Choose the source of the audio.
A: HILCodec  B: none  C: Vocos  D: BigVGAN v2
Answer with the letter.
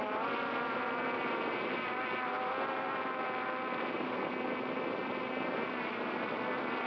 B